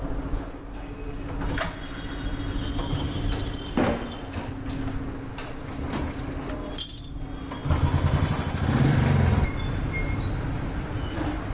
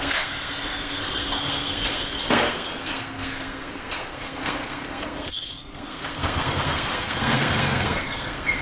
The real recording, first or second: first